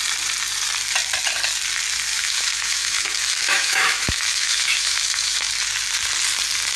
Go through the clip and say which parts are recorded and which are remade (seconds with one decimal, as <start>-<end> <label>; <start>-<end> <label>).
0.0-2.1 recorded; 2.1-5.5 remade; 5.5-6.8 recorded